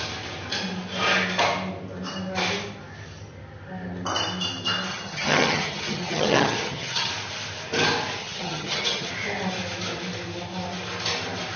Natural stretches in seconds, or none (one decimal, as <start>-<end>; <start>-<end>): 0.0-4.9; 7.1-8.2; 9.1-11.6